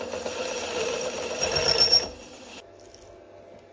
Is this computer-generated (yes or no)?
no